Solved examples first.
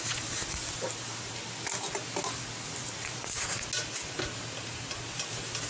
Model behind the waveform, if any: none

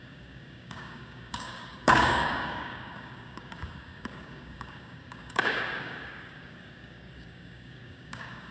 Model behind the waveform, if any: codec, DAC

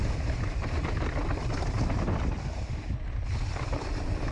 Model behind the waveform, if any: none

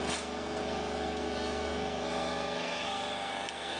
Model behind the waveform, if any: codec, SNAC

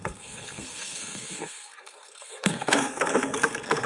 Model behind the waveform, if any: codec, SNAC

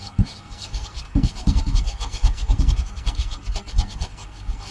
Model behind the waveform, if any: codec, SNAC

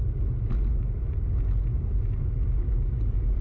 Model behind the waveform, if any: none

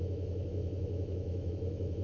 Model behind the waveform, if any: autoencoder, DAC-VAE